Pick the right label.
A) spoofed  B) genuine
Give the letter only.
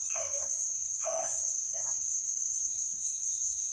A